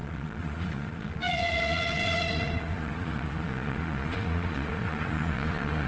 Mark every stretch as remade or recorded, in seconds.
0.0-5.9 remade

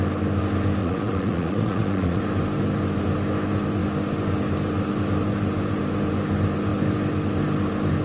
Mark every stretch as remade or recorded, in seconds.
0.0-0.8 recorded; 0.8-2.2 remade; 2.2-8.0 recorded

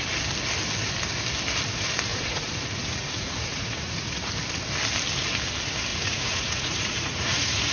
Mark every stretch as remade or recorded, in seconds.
0.0-2.1 recorded; 2.1-4.3 remade; 4.3-5.9 recorded; 5.9-7.7 remade

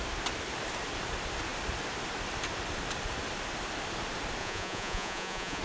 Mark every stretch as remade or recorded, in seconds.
0.0-4.4 recorded; 4.4-5.6 remade

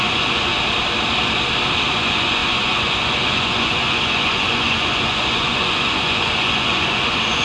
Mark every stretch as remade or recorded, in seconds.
0.0-0.5 remade; 0.5-1.9 recorded; 1.9-7.4 remade

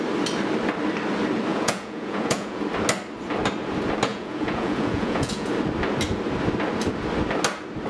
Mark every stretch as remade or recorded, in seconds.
0.0-1.5 recorded; 1.5-2.6 remade; 2.6-4.1 recorded; 4.1-5.5 remade; 5.5-7.9 recorded